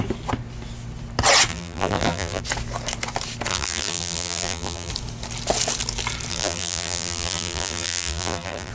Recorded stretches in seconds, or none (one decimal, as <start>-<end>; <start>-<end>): 0.0-1.5; 2.4-3.5; 4.9-6.3